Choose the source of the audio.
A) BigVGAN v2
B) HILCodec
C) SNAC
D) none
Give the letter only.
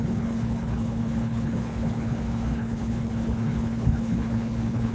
B